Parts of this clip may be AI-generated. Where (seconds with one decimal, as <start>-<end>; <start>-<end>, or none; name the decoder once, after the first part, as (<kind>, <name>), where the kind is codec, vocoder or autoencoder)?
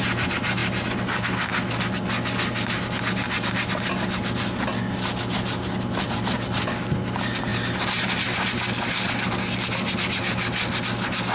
none